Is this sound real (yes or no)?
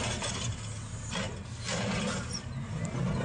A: yes